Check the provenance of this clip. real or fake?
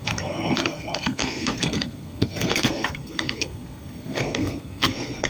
fake